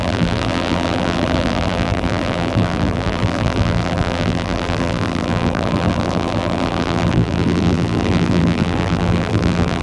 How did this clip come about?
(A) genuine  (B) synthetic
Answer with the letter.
B